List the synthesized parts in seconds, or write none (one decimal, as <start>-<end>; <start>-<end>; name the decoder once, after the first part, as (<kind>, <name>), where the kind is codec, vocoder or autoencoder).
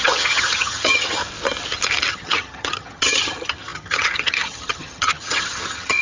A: 0.0-1.2 (vocoder, HiFi-GAN); 2.1-6.0